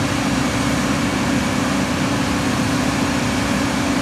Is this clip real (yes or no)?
yes